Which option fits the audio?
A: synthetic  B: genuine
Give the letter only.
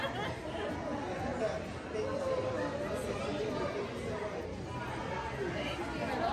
B